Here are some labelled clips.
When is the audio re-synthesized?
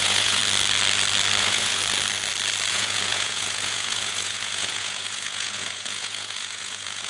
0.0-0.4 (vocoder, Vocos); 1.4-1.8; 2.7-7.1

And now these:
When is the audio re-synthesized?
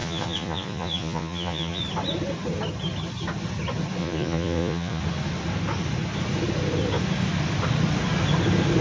0.0-1.8 (vocoder, Vocos); 4.0-5.0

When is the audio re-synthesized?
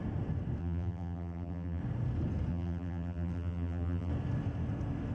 0.6-1.8 (vocoder, BigVGAN v2); 2.5-4.1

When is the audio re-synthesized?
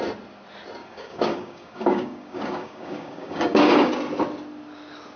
0.8-3.9 (codec, DAC)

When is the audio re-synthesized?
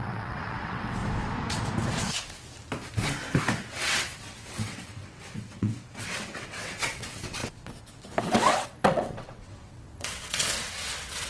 0.0-1.0 (vocoder, WaveNeXt); 3.7-7.4; 8.2-11.3